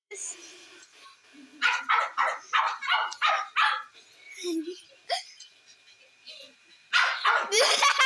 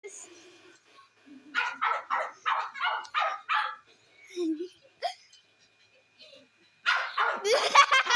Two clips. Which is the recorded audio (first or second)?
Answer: second